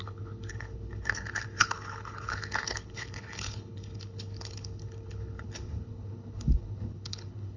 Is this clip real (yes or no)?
no